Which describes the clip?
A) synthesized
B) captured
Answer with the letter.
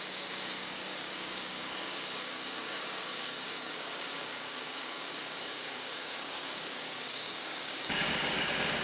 A